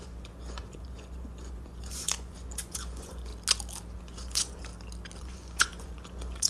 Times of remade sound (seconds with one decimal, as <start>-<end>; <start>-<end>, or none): 0.0-3.3; 4.0-4.7; 5.2-6.5